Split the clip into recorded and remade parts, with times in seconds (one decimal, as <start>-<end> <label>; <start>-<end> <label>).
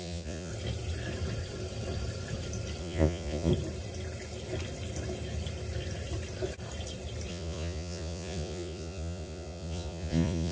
0.0-0.5 remade; 0.5-2.8 recorded; 2.8-3.5 remade; 3.5-7.3 recorded; 7.3-10.5 remade